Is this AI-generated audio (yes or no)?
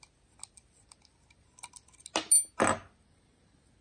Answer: no